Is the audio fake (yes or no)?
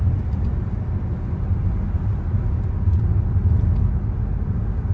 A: no